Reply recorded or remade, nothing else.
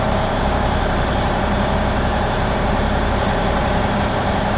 remade